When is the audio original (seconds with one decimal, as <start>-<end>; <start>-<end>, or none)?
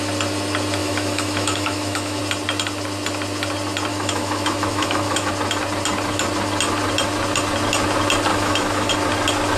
0.0-0.8; 2.2-3.9; 5.3-8.3; 8.9-9.6